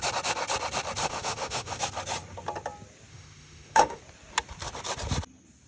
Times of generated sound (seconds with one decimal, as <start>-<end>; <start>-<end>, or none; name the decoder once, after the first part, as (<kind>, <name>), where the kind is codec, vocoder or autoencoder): 1.0-1.8 (autoencoder, DAC-VAE); 3.1-4.0